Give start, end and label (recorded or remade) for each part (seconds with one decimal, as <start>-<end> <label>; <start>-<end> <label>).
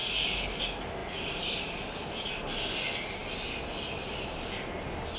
0.0-1.0 recorded; 1.0-1.7 remade; 1.7-5.2 recorded